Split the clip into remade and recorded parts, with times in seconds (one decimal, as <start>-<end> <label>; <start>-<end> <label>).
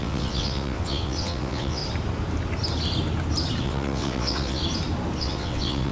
0.0-1.8 remade; 1.8-3.6 recorded; 3.6-4.6 remade; 4.6-5.2 recorded; 5.2-5.9 remade